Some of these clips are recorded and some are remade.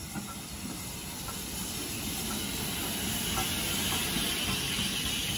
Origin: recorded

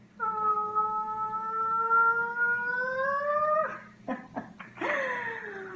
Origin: recorded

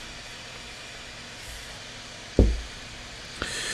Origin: recorded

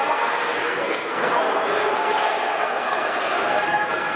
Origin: remade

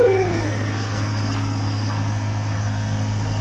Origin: remade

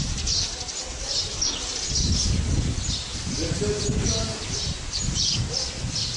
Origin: recorded